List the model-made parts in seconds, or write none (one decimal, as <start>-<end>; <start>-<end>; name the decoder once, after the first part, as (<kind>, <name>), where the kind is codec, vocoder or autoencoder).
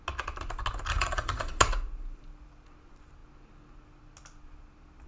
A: 0.9-1.6 (vocoder, Vocos)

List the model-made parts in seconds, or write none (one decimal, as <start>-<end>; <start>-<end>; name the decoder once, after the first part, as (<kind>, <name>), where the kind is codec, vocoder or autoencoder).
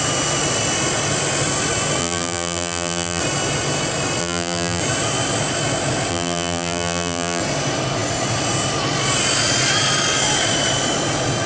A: 2.0-3.2 (vocoder, BigVGAN v2); 4.2-4.8; 6.1-7.4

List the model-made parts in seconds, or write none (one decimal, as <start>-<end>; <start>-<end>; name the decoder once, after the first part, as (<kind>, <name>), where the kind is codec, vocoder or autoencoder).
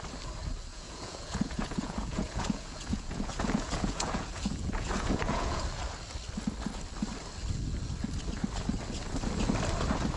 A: 0.7-5.6 (vocoder, Vocos)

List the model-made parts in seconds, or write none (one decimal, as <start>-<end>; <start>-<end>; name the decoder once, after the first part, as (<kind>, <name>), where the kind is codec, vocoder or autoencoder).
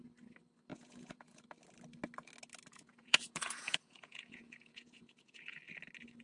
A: 0.7-1.4 (vocoder, Vocos); 2.7-5.6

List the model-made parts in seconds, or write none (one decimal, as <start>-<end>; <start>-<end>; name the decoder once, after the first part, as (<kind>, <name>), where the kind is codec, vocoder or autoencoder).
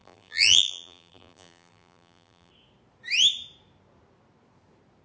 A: 0.0-2.5 (vocoder, BigVGAN v2)